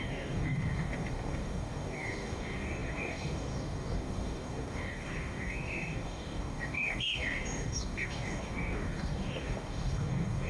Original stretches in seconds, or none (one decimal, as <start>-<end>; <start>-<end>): none